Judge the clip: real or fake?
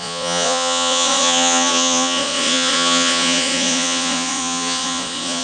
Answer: fake